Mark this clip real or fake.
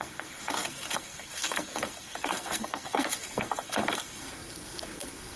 fake